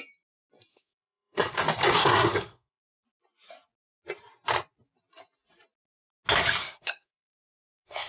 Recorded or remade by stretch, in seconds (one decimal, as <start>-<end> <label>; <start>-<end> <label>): 0.0-0.7 recorded; 0.7-1.6 remade; 1.6-2.0 recorded; 2.0-2.8 remade; 2.8-6.6 recorded; 6.6-8.1 remade